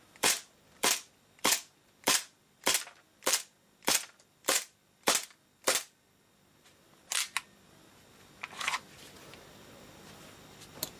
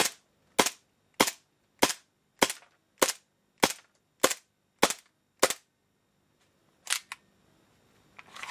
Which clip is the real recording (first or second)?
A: second